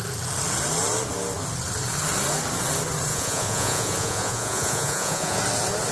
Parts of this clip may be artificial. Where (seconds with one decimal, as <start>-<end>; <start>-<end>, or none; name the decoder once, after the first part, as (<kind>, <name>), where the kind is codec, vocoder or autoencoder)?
3.1-5.4 (vocoder, Vocos)